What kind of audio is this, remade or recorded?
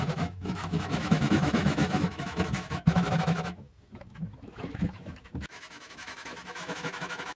remade